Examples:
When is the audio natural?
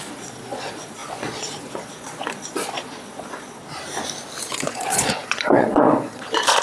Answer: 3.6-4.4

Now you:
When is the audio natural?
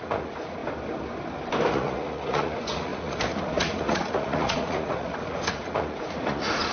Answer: 0.6-1.7